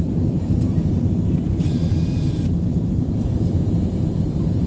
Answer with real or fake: fake